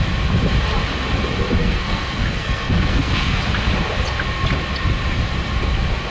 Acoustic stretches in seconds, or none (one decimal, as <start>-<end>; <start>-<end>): 0.0-1.6; 3.4-6.1

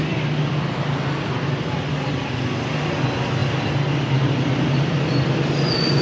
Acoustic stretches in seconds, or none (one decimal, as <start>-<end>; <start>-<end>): 0.0-6.0

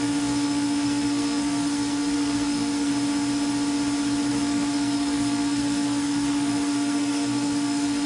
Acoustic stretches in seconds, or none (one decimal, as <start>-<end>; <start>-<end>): 2.9-4.3

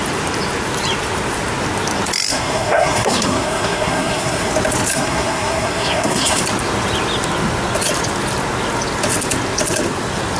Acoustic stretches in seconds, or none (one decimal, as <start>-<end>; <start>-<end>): 0.0-2.3; 4.5-4.9; 6.4-10.4

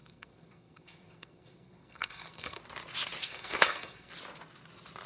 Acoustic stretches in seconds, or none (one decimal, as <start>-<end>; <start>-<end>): 2.6-3.2; 4.1-5.1